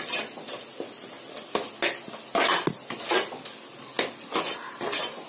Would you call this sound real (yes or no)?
yes